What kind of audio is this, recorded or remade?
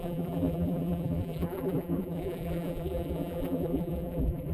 remade